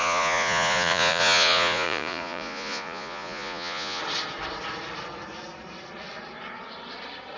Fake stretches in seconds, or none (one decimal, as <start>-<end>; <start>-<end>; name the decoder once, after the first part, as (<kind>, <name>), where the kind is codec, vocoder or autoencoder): 0.0-4.0 (vocoder, Vocos)